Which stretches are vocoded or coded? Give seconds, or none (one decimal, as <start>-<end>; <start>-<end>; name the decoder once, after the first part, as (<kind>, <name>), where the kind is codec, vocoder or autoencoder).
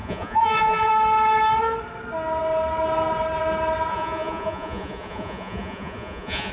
0.0-0.9 (vocoder, Vocos); 3.9-6.5